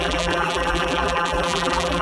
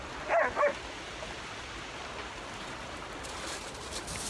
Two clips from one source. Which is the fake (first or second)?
first